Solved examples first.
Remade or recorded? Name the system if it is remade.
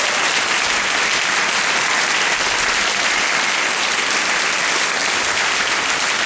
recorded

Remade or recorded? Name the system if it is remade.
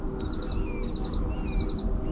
recorded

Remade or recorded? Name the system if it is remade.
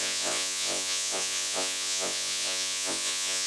remade, vocoder, Vocos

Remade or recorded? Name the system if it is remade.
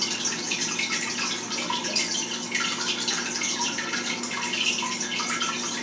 recorded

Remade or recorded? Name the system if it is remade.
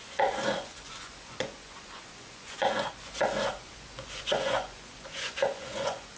remade, vocoder, Vocos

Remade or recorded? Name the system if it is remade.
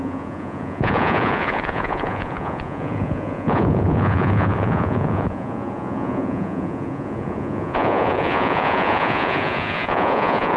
remade, vocoder, Vocos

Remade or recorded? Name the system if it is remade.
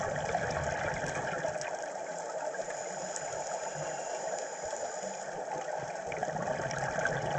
recorded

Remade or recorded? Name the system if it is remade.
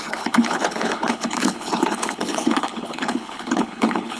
remade, codec, HILCodec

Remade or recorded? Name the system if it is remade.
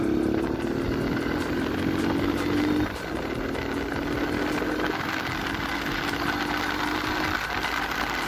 recorded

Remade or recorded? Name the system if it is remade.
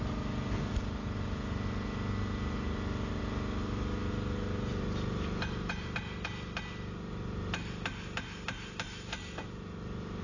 recorded